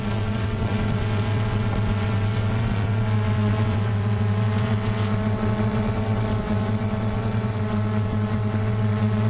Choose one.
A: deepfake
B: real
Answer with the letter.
A